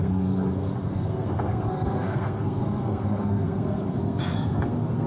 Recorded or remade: remade